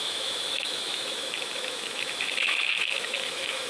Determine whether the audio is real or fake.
fake